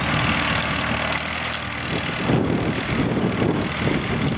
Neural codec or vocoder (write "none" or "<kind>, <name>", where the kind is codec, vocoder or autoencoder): none